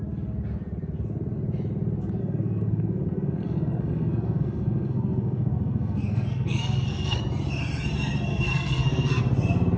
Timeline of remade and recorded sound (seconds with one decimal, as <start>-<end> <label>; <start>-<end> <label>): 0.0-2.2 recorded; 2.2-7.2 remade; 7.2-8.3 recorded; 8.3-9.2 remade; 9.2-9.8 recorded